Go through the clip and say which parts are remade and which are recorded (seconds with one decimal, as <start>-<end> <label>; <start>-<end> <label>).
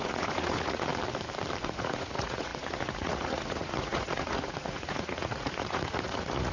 0.0-0.9 remade; 0.9-1.6 recorded; 1.6-6.5 remade